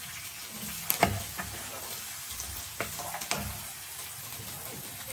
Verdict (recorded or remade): recorded